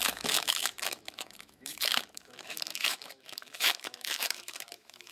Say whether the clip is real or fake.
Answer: fake